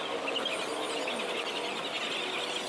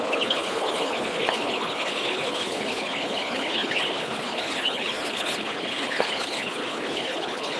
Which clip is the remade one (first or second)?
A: second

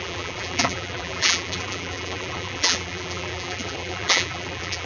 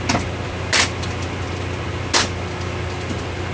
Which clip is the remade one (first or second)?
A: first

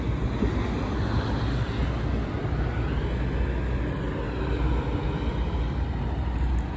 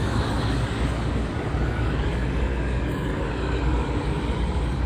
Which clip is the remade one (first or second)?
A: second